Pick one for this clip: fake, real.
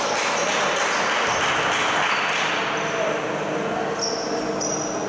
real